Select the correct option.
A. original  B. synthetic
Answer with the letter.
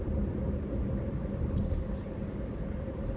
A